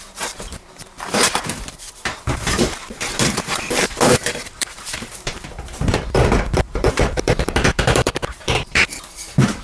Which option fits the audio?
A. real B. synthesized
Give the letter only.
B